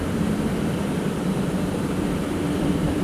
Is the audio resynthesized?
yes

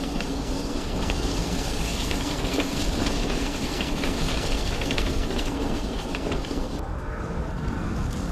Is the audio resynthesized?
yes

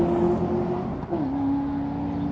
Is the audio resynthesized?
no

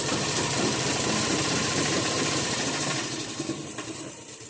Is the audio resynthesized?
yes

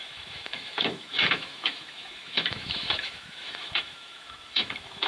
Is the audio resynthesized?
yes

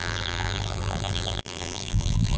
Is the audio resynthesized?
yes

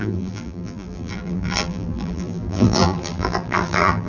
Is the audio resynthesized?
yes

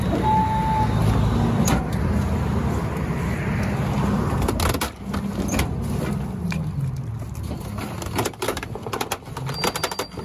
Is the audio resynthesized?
no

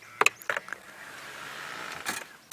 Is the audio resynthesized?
no